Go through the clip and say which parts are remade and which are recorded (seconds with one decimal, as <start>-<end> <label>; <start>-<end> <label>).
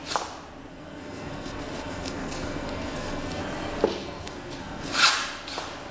0.0-0.7 recorded; 0.7-3.4 remade; 3.4-4.0 recorded; 4.0-4.9 remade; 4.9-5.9 recorded